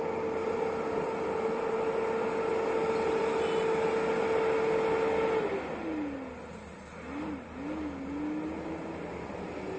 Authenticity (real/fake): real